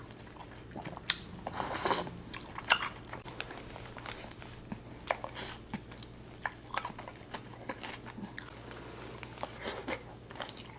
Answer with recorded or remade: recorded